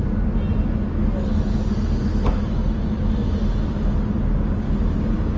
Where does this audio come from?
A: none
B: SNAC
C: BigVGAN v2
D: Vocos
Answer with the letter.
A